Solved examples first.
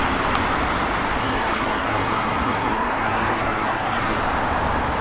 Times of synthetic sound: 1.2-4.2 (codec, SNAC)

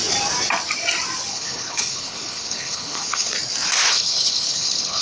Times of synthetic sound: 1.3-3.3 (codec, HILCodec); 3.9-5.0